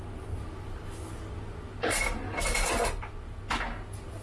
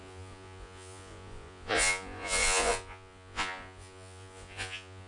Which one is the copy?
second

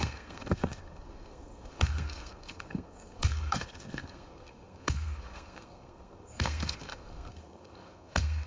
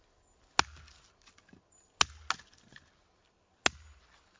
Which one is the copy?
first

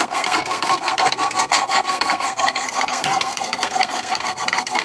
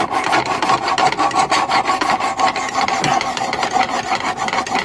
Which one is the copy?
first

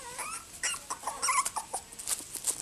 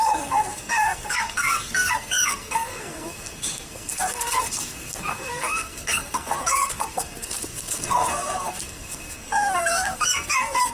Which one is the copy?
second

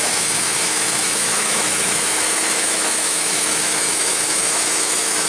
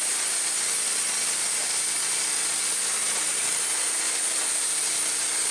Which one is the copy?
first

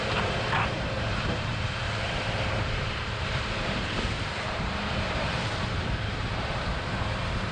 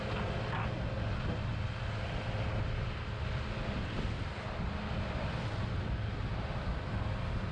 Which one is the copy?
first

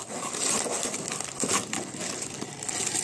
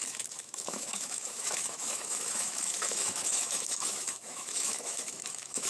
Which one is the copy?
second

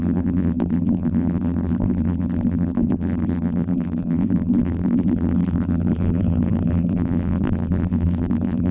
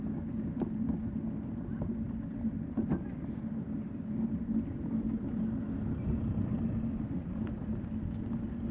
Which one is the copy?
first